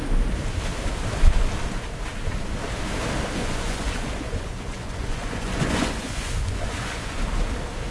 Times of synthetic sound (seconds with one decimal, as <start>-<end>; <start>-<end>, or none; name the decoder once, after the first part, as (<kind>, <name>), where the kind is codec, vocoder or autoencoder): 3.4-7.2 (vocoder, Vocos)